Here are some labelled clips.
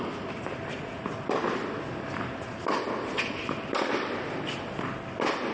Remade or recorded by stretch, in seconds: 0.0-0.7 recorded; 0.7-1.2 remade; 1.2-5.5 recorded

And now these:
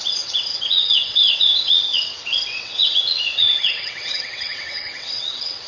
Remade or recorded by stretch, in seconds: 0.0-5.7 remade

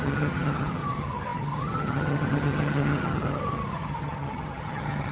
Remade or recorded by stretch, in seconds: 0.0-5.1 remade

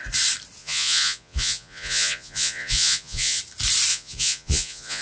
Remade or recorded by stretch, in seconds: 0.0-0.6 recorded; 0.6-3.4 remade; 3.4-3.9 recorded; 3.9-5.0 remade

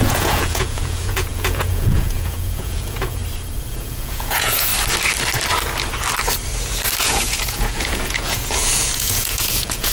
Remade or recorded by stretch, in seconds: 0.0-3.2 remade; 3.2-3.7 recorded; 3.7-4.7 remade; 4.7-7.0 recorded; 7.0-9.9 remade

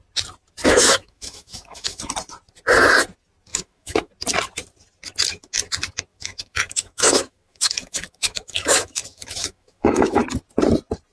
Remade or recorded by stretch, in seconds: 0.0-0.6 recorded; 0.6-2.0 remade; 2.0-3.5 recorded; 3.5-4.1 remade; 4.1-6.1 recorded; 6.1-10.2 remade; 10.2-11.1 recorded